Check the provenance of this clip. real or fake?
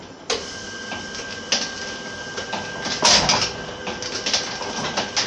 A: real